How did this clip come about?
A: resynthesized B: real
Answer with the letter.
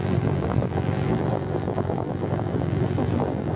A